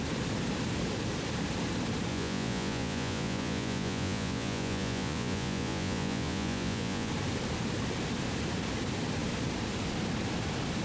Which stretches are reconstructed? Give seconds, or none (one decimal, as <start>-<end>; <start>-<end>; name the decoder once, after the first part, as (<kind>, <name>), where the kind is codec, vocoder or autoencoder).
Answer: 2.1-7.1 (vocoder, Vocos)